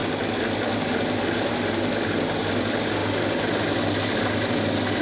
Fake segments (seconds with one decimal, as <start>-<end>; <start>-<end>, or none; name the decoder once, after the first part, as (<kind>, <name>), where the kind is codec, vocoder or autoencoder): none